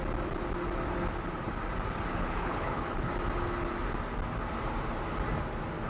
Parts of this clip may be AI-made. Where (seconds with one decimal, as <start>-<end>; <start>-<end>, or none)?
2.1-3.1